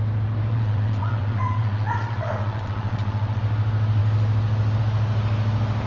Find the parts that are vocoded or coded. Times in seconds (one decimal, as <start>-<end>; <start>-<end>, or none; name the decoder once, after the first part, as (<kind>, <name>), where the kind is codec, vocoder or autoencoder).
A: 0.5-3.4 (vocoder, WaveNeXt)